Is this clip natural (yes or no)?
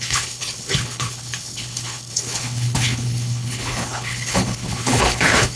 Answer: no